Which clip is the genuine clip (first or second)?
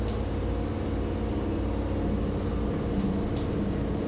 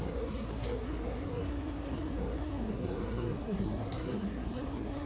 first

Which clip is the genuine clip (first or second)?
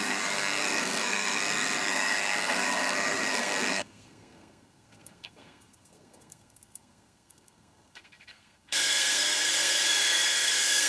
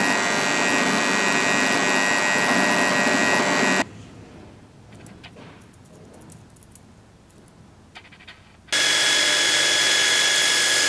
second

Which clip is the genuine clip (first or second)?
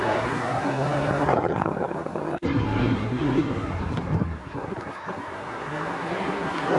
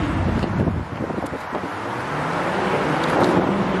second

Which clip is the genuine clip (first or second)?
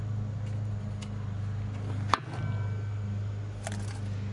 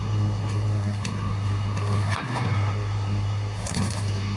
first